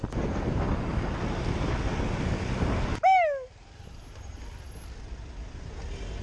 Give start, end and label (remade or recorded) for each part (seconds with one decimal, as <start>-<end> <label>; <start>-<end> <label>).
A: 0.0-6.2 recorded